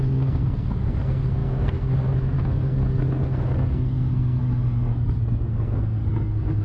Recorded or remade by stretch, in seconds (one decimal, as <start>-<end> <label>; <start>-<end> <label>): 0.0-6.6 remade